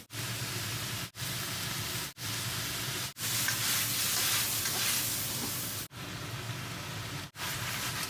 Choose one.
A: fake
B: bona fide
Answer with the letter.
B